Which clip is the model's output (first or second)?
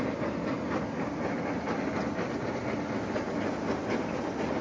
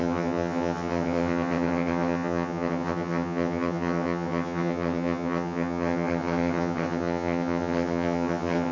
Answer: second